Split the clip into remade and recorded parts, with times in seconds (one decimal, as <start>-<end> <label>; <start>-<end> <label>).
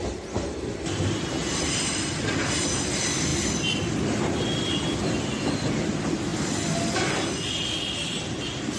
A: 0.0-8.8 recorded